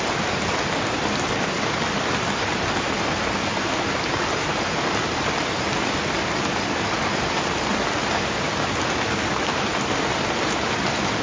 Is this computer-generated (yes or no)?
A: no